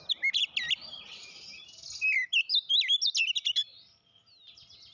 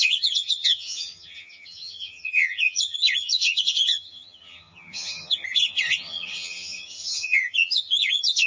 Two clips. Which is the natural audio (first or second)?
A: first